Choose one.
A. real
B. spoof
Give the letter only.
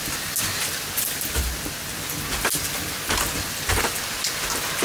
A